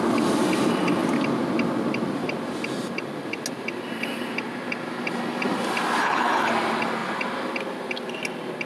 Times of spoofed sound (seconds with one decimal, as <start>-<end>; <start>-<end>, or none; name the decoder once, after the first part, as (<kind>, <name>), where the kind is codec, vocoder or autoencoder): 6.0-6.5 (codec, HILCodec)